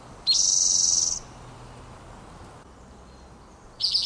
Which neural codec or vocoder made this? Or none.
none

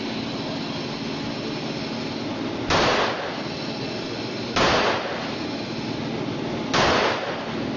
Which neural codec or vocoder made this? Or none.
none